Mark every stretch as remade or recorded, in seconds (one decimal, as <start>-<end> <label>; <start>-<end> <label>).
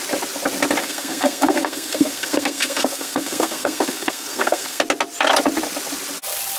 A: 0.0-0.8 recorded; 0.8-4.8 remade; 4.8-6.6 recorded